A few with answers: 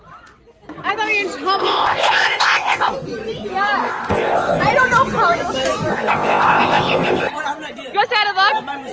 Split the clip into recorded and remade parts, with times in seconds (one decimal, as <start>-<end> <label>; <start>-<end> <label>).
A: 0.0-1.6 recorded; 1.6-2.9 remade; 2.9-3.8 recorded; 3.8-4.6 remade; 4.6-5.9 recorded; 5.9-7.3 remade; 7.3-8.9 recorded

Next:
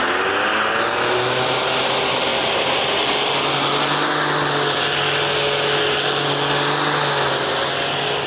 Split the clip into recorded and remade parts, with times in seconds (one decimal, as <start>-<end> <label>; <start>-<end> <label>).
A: 0.0-8.3 recorded

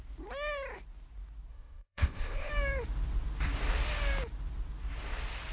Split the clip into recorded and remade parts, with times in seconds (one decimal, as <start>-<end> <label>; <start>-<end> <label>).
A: 0.0-1.5 recorded; 1.5-2.5 remade; 2.5-5.5 recorded

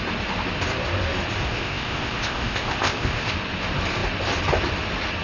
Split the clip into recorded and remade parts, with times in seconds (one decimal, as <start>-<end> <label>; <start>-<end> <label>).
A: 0.0-1.4 recorded; 1.4-3.3 remade; 3.3-5.2 recorded

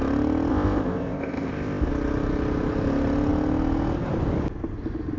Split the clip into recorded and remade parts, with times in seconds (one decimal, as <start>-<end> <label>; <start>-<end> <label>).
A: 0.0-0.5 recorded; 0.5-1.9 remade; 1.9-5.2 recorded

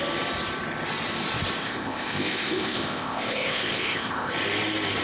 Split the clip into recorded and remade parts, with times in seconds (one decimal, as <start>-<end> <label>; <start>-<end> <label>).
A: 0.0-1.6 recorded; 1.6-4.3 remade; 4.3-5.0 recorded

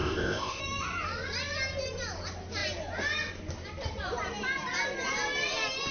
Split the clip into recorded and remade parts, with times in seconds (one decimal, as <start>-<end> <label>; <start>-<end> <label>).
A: 0.0-0.6 remade; 0.6-5.9 recorded

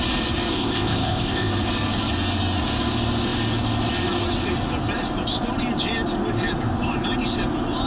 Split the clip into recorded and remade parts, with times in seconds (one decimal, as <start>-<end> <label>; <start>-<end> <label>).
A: 0.0-0.5 recorded; 0.5-1.5 remade; 1.5-7.9 recorded